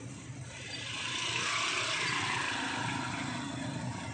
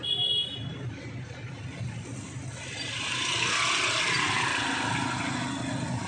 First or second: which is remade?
first